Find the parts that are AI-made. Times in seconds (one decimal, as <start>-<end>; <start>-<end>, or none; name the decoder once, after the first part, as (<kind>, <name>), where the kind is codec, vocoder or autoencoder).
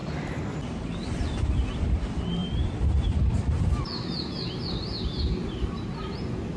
2.4-4.3 (vocoder, BigVGAN v2)